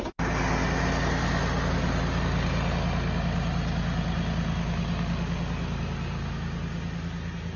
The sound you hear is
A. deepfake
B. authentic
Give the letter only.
B